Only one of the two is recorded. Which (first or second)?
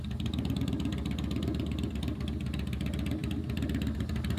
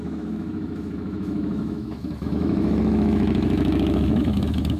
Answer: first